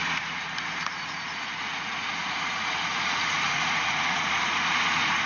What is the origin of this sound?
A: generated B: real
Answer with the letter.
A